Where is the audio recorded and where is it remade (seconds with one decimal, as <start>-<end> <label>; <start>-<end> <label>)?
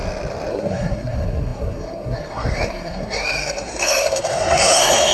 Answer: 0.0-0.5 recorded; 0.5-5.1 remade